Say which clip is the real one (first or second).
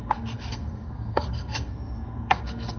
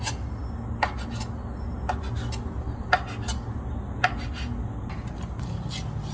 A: second